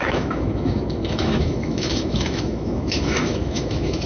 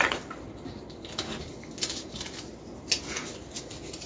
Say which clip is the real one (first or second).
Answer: second